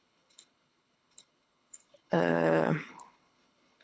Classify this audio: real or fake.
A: fake